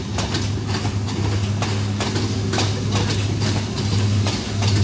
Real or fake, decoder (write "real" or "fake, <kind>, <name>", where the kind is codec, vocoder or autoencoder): real